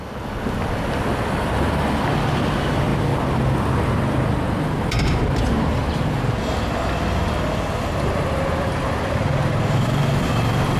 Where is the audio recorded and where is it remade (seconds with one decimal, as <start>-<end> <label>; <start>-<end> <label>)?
0.0-10.8 recorded